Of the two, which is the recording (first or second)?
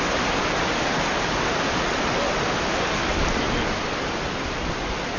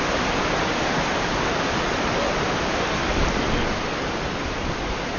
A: first